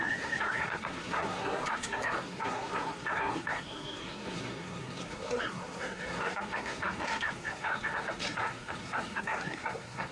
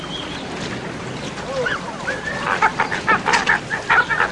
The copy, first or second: first